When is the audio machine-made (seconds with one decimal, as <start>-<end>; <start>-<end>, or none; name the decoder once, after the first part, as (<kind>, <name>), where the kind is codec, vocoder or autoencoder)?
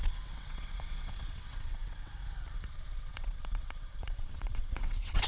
0.0-2.2 (vocoder, WaveNeXt); 3.0-5.3